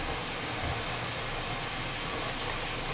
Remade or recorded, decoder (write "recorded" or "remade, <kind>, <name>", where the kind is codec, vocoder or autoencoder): recorded